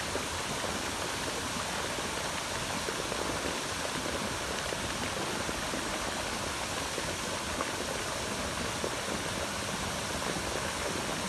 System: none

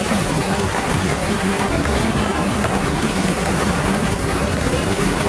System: codec, SNAC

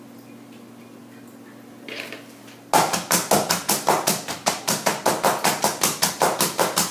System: none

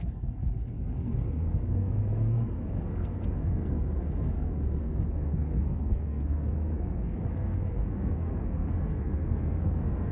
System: codec, SNAC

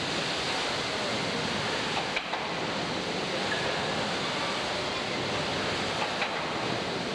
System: none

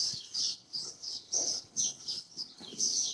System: codec, HILCodec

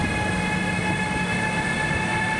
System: none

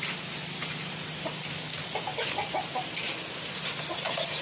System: none